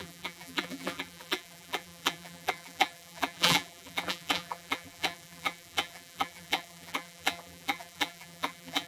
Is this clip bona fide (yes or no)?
no